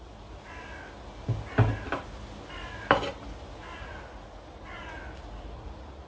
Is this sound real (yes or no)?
yes